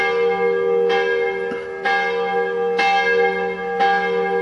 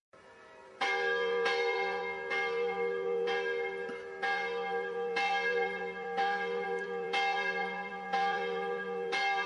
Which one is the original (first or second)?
first